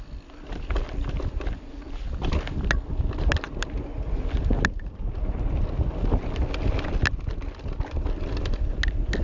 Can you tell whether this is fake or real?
real